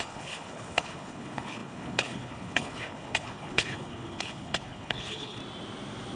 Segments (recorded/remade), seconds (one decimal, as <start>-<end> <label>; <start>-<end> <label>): 0.0-5.4 remade; 5.4-6.2 recorded